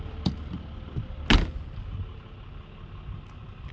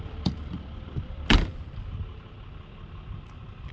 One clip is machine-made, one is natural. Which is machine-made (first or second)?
second